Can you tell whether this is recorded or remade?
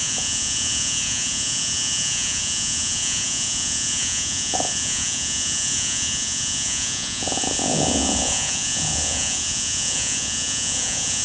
remade